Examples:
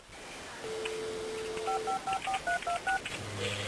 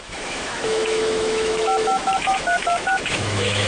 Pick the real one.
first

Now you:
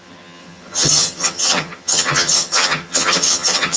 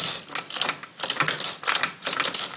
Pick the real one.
second